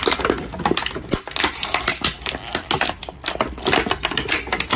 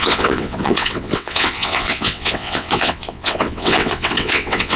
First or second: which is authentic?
first